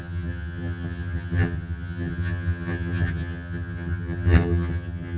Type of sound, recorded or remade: remade